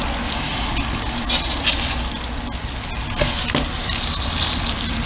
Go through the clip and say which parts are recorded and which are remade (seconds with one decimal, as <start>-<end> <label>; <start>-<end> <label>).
0.0-5.1 recorded